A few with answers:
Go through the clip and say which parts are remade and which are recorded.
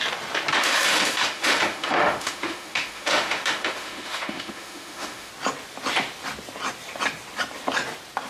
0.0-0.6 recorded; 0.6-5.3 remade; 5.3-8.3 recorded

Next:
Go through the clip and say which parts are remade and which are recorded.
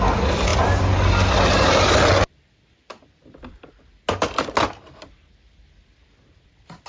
0.0-6.9 recorded